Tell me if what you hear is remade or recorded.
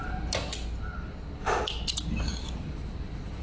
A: recorded